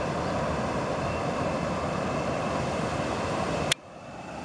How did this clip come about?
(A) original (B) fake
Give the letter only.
A